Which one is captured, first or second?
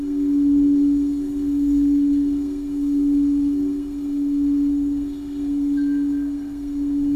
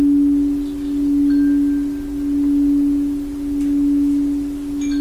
second